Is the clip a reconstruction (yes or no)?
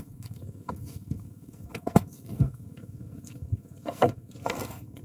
yes